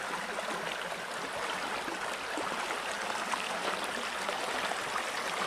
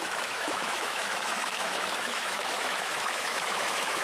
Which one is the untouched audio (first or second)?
first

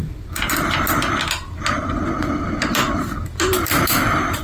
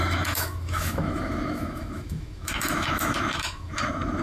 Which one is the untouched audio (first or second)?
first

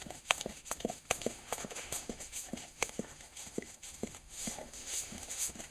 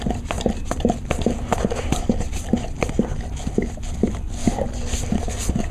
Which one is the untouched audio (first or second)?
second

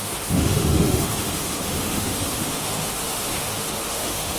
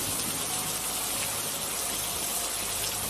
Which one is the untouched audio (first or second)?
second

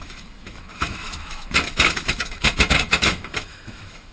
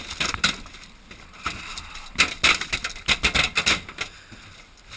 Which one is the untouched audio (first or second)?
second